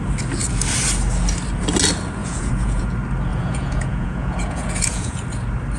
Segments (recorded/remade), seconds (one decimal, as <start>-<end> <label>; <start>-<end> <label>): 0.0-2.2 recorded; 2.2-2.9 remade; 2.9-3.3 recorded; 3.3-5.2 remade; 5.2-5.8 recorded